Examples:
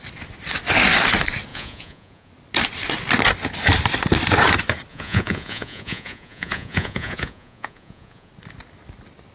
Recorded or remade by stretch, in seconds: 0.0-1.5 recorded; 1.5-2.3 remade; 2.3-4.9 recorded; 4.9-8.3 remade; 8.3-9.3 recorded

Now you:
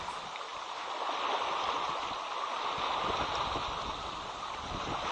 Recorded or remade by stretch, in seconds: 0.0-5.1 recorded

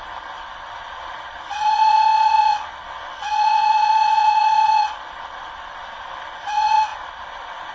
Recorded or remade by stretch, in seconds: 0.0-7.7 remade

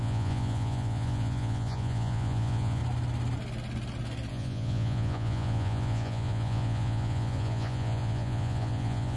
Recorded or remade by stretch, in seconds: 0.0-2.8 remade; 2.8-4.3 recorded; 4.3-9.2 remade